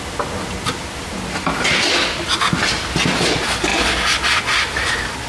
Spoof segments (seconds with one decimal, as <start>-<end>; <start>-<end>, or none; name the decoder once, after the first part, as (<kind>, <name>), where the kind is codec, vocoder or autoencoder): none